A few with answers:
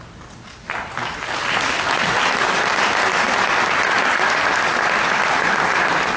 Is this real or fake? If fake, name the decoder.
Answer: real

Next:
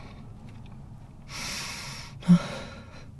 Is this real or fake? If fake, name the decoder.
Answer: real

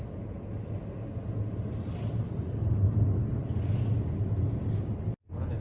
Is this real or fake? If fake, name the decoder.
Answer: real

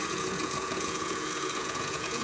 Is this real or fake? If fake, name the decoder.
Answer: fake, vocoder, Vocos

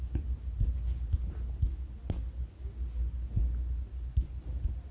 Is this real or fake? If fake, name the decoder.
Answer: real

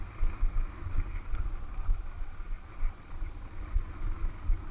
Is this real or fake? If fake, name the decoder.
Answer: real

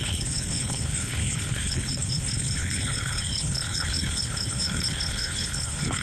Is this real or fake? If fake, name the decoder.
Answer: fake, codec, HILCodec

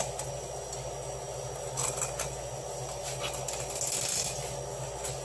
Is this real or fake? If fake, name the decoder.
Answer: real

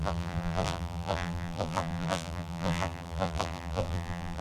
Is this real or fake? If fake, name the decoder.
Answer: fake, vocoder, BigVGAN v2